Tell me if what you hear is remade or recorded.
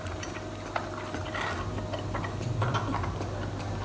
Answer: recorded